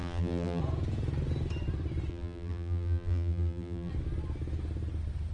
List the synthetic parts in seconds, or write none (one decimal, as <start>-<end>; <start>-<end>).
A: 0.0-0.6; 2.1-3.9